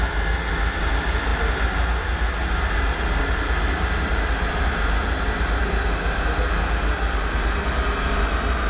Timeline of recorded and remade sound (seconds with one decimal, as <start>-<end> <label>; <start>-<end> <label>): 0.0-8.7 recorded